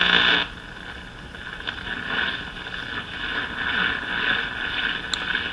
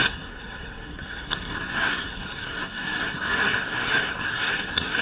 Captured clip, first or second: first